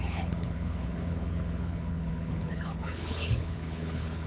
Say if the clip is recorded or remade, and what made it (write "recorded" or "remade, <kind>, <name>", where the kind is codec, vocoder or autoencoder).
remade, codec, HILCodec